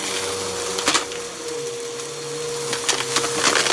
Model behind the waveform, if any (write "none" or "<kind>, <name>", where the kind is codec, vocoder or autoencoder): none